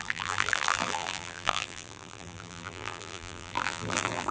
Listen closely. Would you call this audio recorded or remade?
remade